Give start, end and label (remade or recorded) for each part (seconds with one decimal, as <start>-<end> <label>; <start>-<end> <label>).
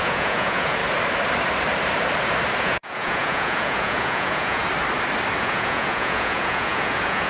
0.0-0.8 remade; 0.8-2.6 recorded; 2.6-4.6 remade; 4.6-5.4 recorded; 5.4-7.3 remade